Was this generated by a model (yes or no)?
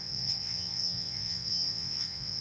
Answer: yes